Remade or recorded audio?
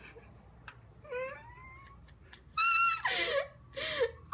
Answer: recorded